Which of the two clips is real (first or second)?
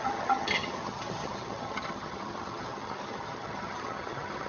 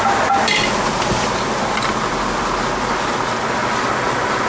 second